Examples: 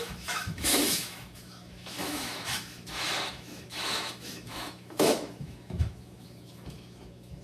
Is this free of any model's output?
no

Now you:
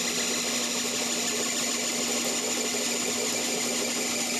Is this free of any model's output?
yes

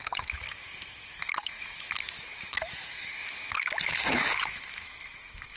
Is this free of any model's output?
no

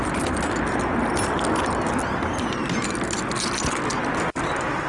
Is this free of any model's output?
yes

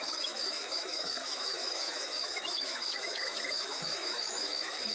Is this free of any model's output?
no